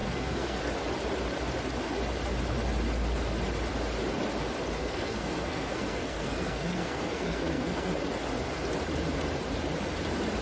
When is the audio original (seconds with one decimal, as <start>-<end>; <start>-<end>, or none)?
0.6-4.8; 7.9-10.4